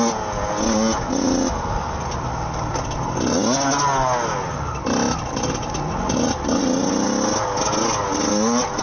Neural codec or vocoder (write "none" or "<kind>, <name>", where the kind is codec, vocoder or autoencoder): none